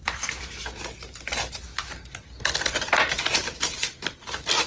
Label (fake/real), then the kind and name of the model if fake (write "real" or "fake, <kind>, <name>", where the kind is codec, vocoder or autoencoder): fake, vocoder, BigVGAN v2